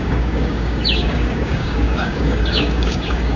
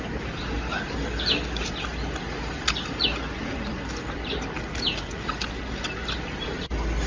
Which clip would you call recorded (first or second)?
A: second